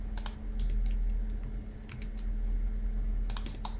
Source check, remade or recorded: recorded